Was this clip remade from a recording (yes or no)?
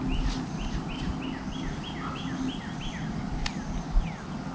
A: no